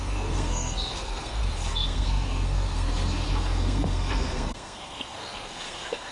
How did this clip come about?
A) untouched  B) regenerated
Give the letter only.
B